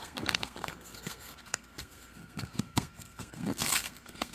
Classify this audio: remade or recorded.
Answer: remade